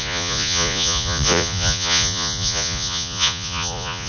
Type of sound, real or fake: fake